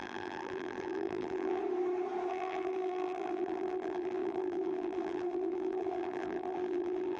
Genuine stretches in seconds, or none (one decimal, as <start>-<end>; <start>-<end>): 1.6-2.3